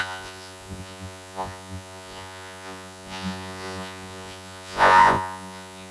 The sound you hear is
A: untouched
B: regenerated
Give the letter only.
B